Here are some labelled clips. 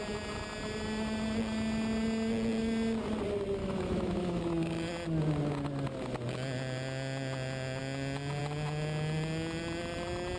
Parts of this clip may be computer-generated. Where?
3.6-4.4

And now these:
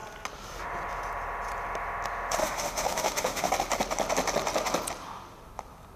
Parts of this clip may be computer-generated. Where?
2.4-3.5

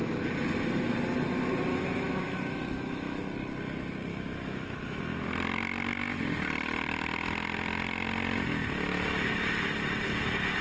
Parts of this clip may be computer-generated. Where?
1.7-3.2; 4.1-5.0

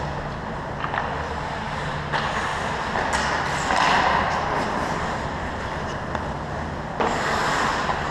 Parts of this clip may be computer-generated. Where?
none

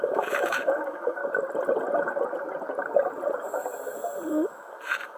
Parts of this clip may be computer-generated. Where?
0.0-1.2; 4.3-5.2

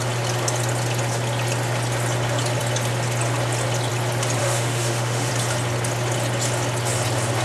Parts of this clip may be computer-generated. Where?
4.4-5.3